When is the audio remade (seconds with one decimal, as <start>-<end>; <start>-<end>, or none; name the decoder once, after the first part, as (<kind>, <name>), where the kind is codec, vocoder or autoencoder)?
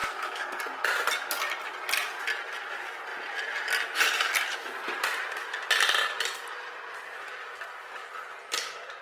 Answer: 0.0-0.6 (codec, SNAC)